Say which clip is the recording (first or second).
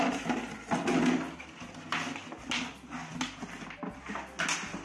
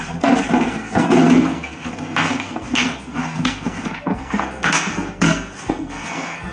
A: first